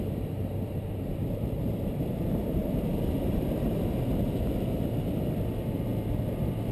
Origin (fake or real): fake